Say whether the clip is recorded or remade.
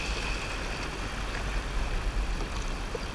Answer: recorded